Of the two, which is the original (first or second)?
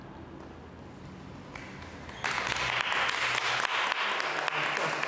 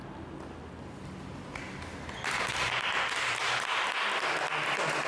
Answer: first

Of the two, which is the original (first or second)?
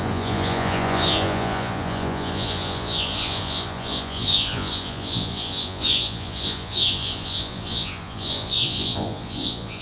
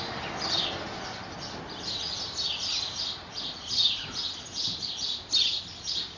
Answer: second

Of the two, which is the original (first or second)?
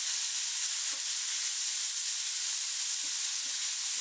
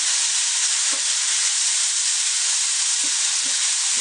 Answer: first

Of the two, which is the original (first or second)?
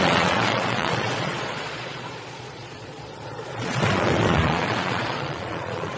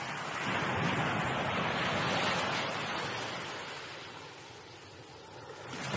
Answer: second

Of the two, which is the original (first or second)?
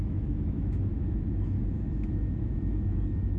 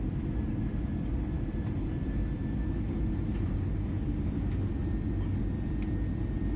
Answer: second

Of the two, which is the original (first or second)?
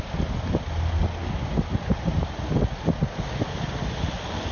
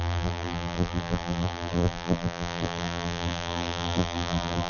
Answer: first